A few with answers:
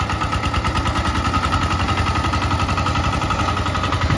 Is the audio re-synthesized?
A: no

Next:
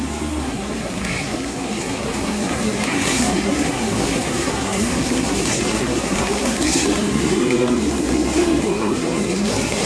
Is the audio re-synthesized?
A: yes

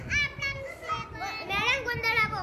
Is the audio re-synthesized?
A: no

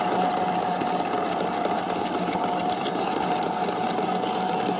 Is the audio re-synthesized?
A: no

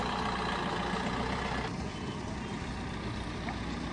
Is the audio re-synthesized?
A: no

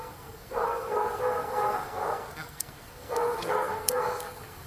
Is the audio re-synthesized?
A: yes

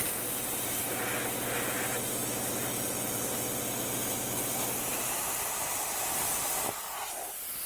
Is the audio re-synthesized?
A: no